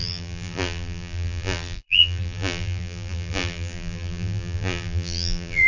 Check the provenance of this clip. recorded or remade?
remade